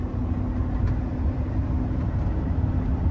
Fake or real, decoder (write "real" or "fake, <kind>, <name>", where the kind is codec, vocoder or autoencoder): real